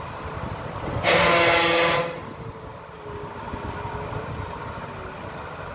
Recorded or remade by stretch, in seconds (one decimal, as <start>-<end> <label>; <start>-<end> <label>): 0.0-5.7 recorded